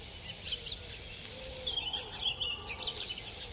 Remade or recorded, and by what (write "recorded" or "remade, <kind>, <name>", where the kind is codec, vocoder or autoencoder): recorded